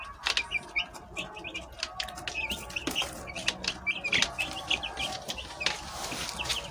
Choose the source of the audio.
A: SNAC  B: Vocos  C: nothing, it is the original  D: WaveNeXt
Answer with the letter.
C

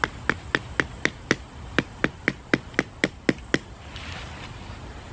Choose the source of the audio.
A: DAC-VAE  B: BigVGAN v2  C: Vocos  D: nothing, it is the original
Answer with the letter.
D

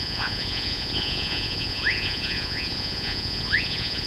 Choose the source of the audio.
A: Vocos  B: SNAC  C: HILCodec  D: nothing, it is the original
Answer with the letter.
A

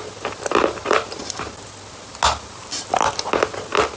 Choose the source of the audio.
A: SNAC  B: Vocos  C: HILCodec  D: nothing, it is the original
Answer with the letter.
D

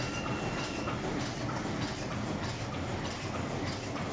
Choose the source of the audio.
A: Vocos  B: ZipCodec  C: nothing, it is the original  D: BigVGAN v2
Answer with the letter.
C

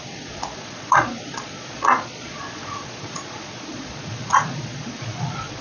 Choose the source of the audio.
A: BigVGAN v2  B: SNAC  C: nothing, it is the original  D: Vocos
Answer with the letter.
D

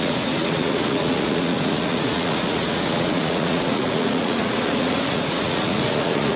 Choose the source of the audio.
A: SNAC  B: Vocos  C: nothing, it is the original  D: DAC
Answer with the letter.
B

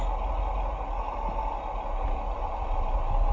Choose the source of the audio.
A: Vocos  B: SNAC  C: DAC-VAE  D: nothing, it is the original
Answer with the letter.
D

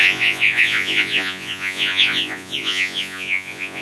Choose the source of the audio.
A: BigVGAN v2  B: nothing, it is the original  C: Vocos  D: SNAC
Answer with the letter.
C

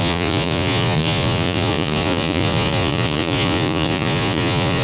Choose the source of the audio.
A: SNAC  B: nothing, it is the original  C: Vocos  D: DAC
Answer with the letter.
C